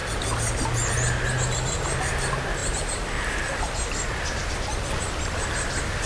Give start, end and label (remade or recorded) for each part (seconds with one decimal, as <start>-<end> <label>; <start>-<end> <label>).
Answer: 0.0-6.1 recorded